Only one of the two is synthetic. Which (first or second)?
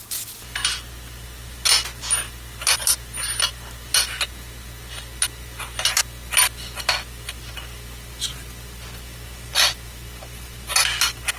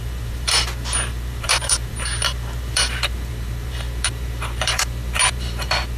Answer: second